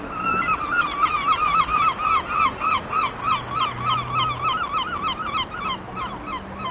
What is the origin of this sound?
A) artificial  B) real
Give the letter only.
B